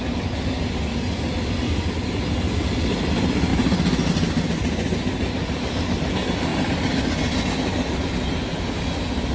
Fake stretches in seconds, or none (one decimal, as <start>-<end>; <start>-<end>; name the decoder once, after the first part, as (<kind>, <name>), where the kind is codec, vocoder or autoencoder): none